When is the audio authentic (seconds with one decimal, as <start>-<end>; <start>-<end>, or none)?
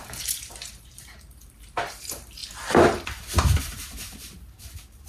2.4-3.6